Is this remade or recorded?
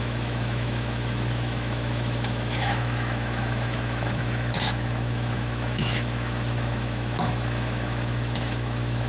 remade